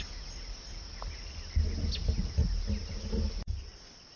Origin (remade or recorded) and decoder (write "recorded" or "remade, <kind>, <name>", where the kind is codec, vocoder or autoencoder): recorded